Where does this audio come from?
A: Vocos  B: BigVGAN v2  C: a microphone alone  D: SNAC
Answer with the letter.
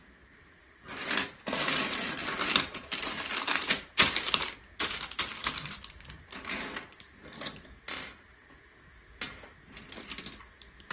C